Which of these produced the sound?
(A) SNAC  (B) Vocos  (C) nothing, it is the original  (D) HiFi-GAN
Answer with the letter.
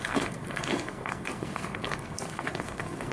A